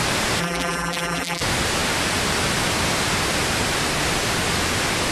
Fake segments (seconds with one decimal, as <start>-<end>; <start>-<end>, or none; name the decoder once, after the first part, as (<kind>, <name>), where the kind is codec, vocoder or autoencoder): 0.4-1.4 (vocoder, BigVGAN v2)